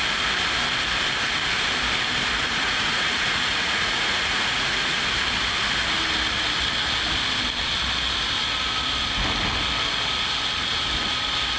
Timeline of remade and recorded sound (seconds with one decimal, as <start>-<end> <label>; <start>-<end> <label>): 0.0-2.4 recorded; 2.4-5.0 remade; 5.0-11.6 recorded